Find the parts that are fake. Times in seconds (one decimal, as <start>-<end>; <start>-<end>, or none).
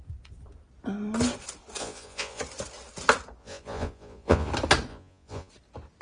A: 1.8-2.4; 3.4-4.5; 4.9-5.5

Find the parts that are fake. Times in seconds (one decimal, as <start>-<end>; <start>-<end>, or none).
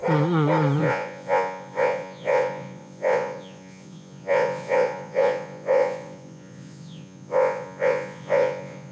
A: 0.8-8.9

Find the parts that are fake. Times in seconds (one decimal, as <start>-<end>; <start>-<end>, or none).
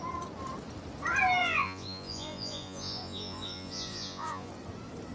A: 1.4-4.5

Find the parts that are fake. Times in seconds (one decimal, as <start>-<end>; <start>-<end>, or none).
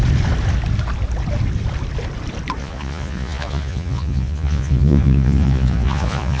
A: 2.6-6.4